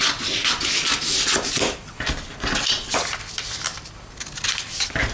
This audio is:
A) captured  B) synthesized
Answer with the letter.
A